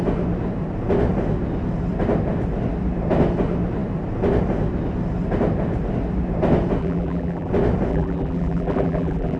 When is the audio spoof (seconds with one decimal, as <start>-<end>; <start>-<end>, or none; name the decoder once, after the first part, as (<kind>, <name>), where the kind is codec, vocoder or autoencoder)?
6.8-7.5 (vocoder, BigVGAN v2); 7.9-9.4